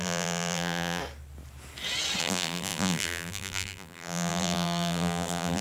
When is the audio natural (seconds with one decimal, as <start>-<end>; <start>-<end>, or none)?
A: 1.0-2.2